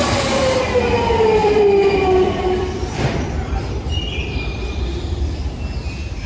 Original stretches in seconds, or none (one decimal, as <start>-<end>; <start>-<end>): 0.0-1.4; 5.2-6.3